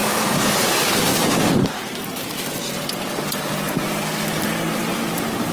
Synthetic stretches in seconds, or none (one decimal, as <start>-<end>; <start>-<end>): 0.0-1.1; 4.4-5.5